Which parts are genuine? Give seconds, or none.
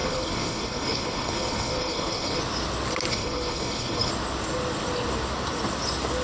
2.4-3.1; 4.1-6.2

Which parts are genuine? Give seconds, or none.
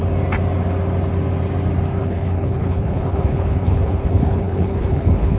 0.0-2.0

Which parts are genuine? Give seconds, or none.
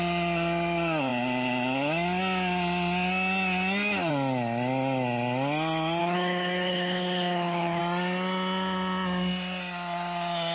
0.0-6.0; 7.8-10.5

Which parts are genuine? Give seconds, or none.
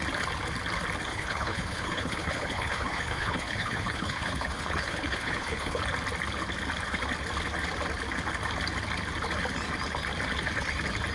0.0-1.1; 5.8-11.1